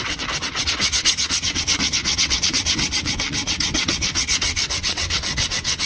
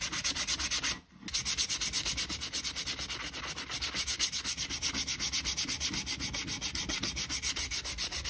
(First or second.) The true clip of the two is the second